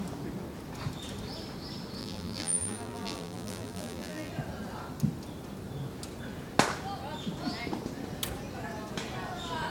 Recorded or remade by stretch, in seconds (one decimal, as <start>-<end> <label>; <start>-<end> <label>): 0.0-2.0 recorded; 2.0-4.3 remade; 4.3-9.7 recorded